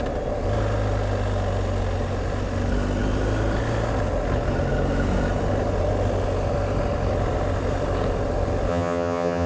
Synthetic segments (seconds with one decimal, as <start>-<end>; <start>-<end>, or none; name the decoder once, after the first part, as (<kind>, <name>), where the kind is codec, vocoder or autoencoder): 8.7-9.5 (vocoder, HiFi-GAN)